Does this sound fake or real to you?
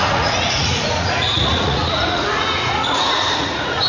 fake